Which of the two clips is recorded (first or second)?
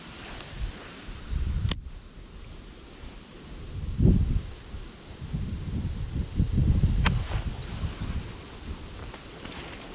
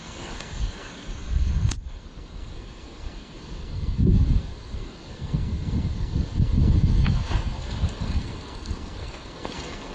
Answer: first